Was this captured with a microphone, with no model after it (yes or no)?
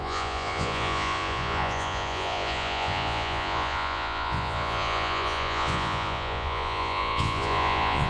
no